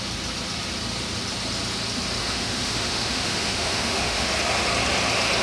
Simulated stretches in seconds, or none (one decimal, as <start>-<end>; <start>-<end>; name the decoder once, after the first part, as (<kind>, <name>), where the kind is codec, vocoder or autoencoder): 2.2-4.3 (autoencoder, DAC-VAE)